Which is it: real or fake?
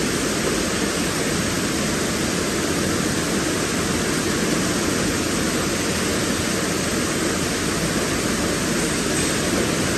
real